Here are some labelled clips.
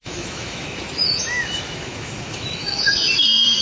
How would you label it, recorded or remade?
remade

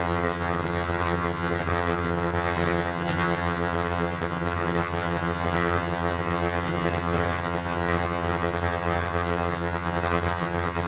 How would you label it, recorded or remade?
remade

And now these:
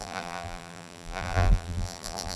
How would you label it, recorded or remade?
remade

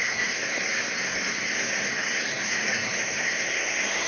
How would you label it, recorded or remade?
remade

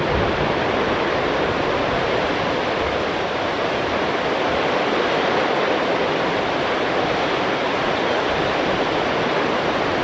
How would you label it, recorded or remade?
remade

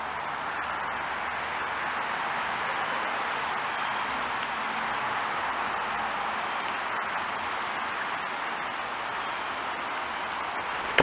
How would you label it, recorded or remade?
recorded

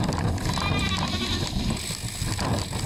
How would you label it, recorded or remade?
recorded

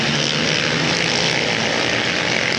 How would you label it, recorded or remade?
recorded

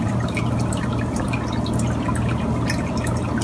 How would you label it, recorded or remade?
recorded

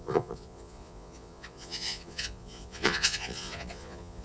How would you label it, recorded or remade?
remade